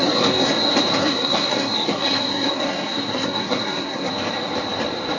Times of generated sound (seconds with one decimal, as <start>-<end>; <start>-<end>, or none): 0.0-0.5; 1.0-4.1